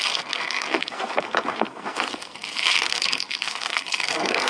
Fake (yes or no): yes